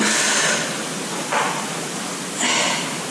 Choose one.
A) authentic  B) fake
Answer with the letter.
A